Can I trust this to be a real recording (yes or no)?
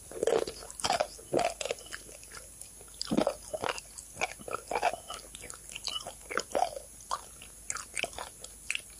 yes